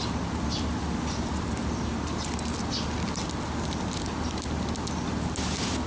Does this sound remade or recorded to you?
recorded